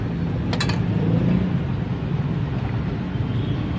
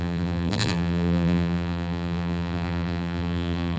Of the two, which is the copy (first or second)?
second